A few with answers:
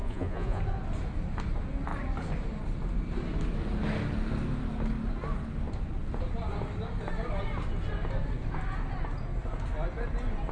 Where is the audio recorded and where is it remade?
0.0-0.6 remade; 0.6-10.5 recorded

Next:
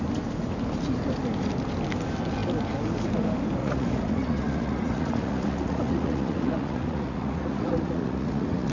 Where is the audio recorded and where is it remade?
0.0-3.6 recorded; 3.6-8.7 remade

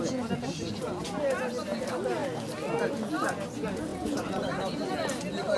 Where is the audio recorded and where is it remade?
0.0-3.9 recorded; 3.9-4.9 remade; 4.9-5.6 recorded

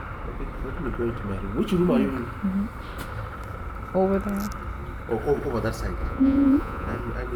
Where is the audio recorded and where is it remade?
0.0-6.0 recorded; 6.0-7.0 remade; 7.0-7.4 recorded

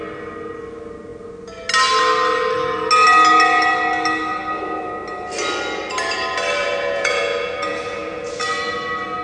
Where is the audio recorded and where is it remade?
0.0-6.6 recorded; 6.6-8.3 remade; 8.3-9.2 recorded